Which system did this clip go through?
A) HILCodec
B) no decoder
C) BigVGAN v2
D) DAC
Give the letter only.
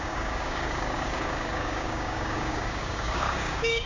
D